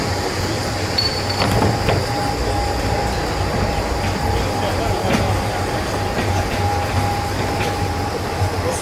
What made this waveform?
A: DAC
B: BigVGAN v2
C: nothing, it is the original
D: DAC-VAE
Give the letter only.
C